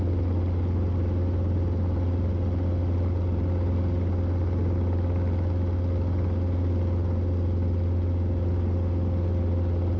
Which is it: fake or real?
real